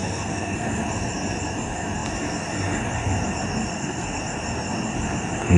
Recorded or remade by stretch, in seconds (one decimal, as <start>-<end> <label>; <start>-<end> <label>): 0.0-0.7 remade; 0.7-3.7 recorded; 3.7-4.2 remade; 4.2-5.6 recorded